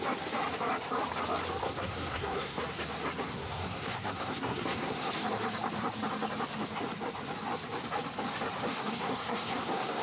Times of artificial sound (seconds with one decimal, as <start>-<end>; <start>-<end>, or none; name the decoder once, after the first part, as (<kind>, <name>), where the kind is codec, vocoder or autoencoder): 1.6-2.6 (codec, SNAC); 3.3-5.1; 8.7-10.0